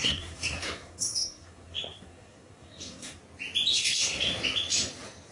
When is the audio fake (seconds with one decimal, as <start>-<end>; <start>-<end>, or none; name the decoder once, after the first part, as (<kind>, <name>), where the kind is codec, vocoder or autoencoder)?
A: 0.0-3.2 (codec, SNAC); 3.7-4.3